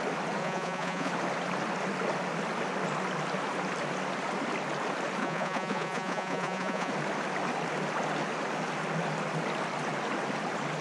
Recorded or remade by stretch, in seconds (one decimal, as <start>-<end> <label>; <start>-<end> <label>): 0.0-0.4 recorded; 0.4-1.1 remade; 1.1-5.2 recorded; 5.2-6.9 remade; 6.9-10.8 recorded